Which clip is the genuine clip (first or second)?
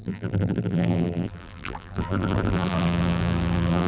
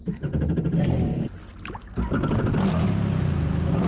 second